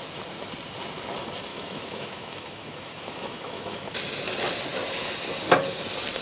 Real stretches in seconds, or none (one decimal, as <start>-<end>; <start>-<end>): 0.0-1.5; 3.9-6.2